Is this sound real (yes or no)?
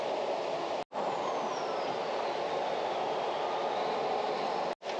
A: yes